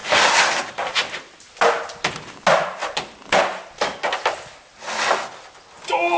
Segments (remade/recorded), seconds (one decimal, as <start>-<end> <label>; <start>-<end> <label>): 0.0-6.2 recorded